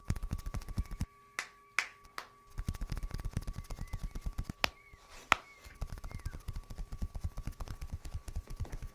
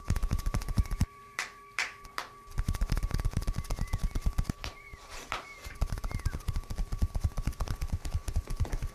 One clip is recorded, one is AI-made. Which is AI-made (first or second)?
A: second